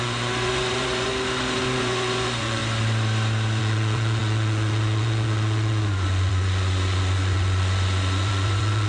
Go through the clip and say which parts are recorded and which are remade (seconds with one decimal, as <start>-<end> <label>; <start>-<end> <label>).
0.0-1.1 remade; 1.1-1.8 recorded; 1.8-2.6 remade; 2.6-3.6 recorded; 3.6-8.9 remade